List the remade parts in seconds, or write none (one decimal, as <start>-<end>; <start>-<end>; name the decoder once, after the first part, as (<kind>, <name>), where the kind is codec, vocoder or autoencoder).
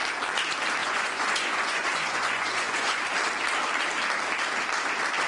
0.8-3.1 (vocoder, Vocos)